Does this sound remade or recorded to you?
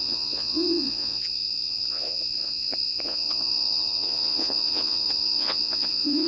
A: remade